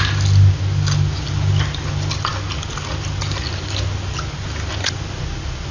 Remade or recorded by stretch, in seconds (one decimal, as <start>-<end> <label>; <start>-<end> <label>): 0.0-5.7 recorded